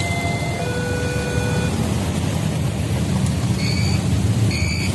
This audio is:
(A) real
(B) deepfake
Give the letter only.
A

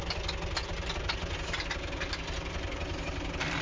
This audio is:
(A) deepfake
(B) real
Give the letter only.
B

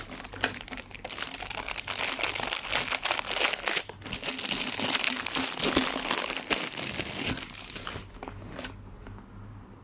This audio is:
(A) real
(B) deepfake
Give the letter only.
A